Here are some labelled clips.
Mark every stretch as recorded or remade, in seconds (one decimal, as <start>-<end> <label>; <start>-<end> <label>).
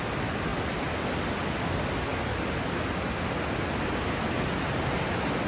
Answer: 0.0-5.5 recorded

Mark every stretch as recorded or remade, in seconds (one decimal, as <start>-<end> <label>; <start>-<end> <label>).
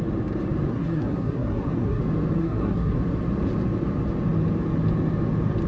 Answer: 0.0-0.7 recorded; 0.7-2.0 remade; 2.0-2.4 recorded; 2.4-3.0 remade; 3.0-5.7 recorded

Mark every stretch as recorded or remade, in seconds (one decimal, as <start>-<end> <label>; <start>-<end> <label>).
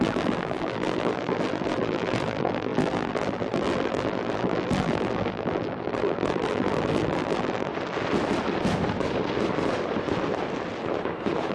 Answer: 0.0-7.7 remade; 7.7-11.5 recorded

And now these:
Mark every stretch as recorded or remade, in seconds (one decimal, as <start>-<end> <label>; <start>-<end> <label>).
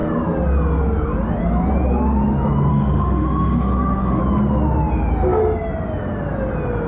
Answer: 0.0-2.7 recorded; 2.7-4.2 remade; 4.2-6.9 recorded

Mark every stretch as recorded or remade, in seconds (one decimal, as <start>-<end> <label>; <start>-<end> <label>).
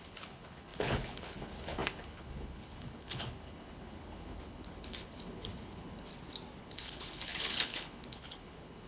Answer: 0.0-6.1 remade; 6.1-6.6 recorded; 6.6-8.9 remade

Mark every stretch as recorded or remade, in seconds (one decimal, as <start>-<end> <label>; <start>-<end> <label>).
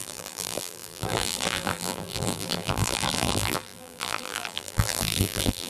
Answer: 0.0-5.7 remade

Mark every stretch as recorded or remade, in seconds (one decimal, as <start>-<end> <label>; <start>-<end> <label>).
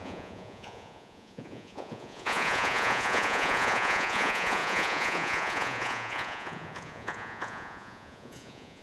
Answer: 0.0-8.8 remade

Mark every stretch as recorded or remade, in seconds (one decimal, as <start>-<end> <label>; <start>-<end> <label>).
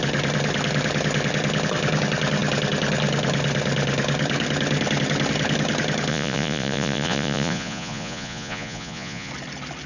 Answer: 0.0-6.1 recorded; 6.1-9.3 remade; 9.3-9.9 recorded